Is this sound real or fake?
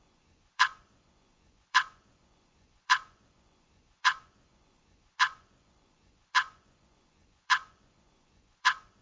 fake